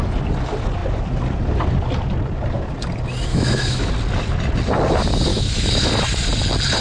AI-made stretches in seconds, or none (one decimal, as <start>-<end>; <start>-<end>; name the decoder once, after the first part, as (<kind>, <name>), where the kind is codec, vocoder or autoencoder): 3.3-3.9 (autoencoder, DAC-VAE); 5.3-5.8